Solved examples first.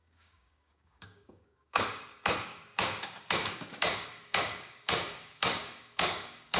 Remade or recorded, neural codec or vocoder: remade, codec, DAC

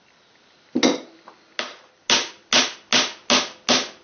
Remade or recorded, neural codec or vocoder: recorded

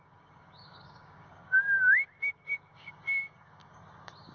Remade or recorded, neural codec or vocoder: remade, codec, DAC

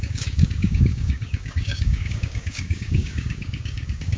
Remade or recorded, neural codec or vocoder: remade, codec, DAC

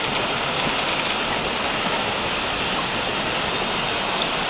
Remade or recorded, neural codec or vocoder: recorded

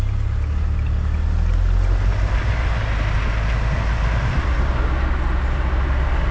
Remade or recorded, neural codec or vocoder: recorded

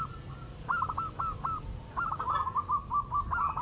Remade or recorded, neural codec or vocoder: recorded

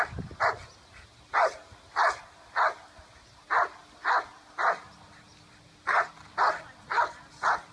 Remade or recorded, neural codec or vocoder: recorded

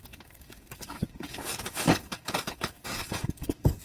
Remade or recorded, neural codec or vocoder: remade, codec, DAC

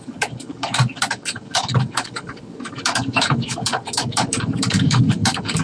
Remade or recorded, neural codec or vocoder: remade, codec, DAC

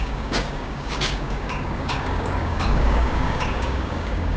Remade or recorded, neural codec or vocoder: remade, codec, DAC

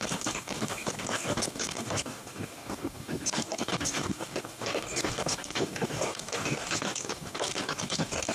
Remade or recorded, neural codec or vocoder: remade, codec, DAC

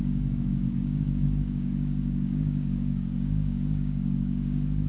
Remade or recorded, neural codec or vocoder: remade, codec, DAC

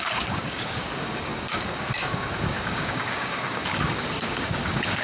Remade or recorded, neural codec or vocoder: remade, codec, DAC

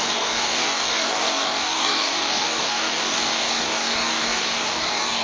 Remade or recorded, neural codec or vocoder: remade, codec, DAC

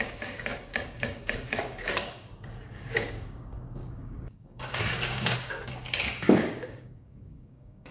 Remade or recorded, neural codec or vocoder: remade, codec, DAC